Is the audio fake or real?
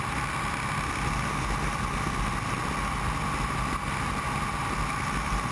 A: real